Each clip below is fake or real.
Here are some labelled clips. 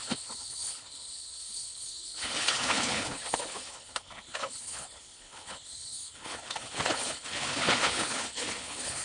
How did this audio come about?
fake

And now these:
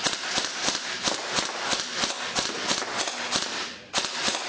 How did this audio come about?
real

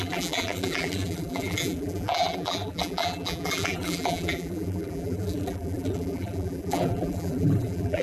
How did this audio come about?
fake